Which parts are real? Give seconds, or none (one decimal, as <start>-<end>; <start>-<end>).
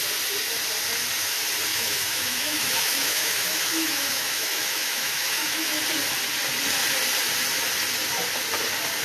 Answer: 0.0-1.7; 5.8-9.0